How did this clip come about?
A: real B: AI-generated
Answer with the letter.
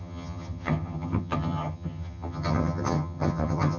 B